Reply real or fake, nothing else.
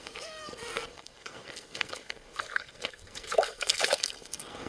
fake